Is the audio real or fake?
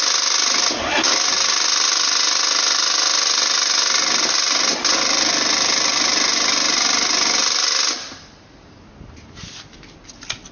real